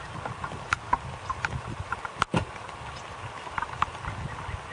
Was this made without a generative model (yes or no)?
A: yes